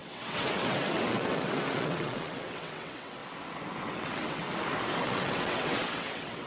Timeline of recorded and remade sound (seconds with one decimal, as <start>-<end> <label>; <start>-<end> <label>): 0.0-3.2 remade; 3.2-3.8 recorded; 3.8-4.4 remade; 4.4-5.0 recorded; 5.0-6.5 remade